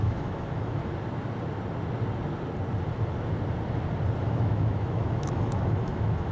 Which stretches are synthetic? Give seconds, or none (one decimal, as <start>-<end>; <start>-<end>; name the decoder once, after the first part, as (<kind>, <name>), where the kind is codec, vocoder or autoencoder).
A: 0.0-0.8 (autoencoder, DAC-VAE); 4.2-6.3